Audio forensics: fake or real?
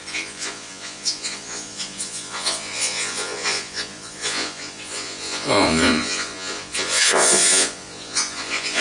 fake